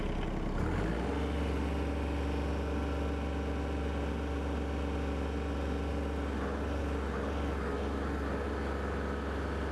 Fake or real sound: real